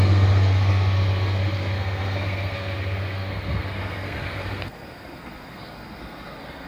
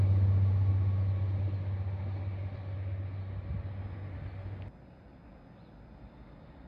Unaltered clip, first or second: second